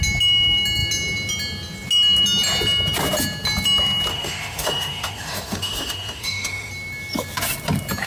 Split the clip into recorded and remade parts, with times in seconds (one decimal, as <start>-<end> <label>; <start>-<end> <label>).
0.0-4.1 recorded; 4.1-6.7 remade; 6.7-8.1 recorded